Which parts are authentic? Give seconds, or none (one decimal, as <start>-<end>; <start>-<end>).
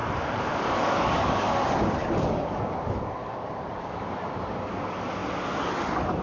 1.5-2.0; 4.3-6.2